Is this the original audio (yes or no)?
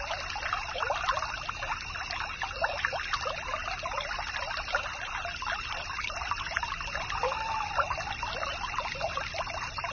yes